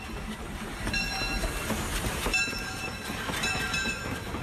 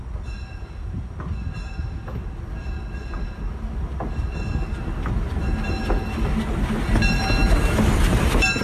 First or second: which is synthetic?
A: first